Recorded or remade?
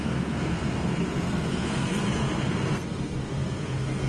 remade